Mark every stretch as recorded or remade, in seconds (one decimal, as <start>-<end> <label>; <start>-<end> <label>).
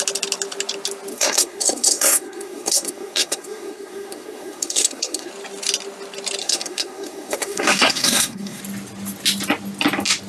0.0-1.1 recorded; 1.1-5.3 remade; 5.3-6.4 recorded; 6.4-8.6 remade; 8.6-10.3 recorded